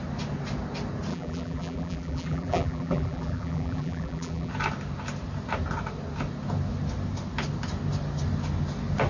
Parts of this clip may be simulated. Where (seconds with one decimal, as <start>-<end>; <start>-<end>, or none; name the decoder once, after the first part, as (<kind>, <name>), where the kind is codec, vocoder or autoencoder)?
1.1-4.5 (vocoder, BigVGAN v2)